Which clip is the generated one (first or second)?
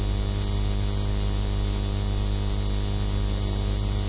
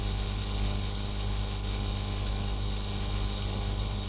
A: second